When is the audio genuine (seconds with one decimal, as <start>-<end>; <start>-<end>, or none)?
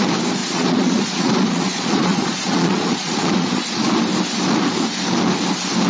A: 0.0-0.4; 3.9-5.9